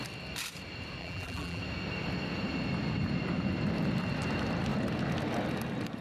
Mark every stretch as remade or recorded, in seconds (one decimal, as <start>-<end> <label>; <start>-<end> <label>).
0.0-1.0 recorded; 1.0-1.6 remade; 1.6-6.0 recorded